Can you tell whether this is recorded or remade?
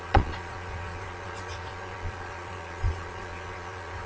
remade